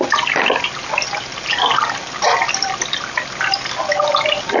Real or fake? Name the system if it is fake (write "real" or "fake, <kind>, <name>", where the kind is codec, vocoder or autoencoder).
real